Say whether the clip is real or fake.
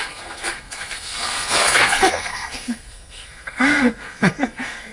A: fake